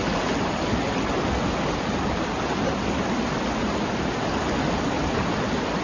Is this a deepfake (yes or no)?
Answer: no